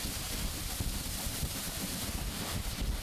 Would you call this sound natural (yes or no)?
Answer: yes